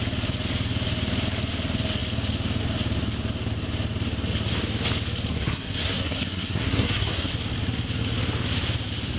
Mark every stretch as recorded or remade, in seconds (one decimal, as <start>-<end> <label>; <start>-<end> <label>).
0.0-5.3 recorded; 5.3-7.3 remade; 7.3-9.2 recorded